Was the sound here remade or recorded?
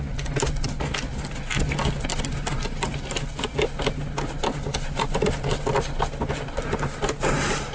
recorded